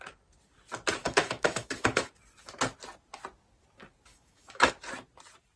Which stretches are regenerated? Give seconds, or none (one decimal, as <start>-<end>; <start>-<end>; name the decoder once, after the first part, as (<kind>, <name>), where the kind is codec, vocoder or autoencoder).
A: 1.0-2.1 (autoencoder, DAC-VAE); 4.1-4.7